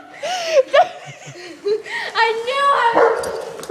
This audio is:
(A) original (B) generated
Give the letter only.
A